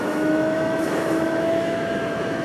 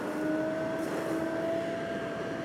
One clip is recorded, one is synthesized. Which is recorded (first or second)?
second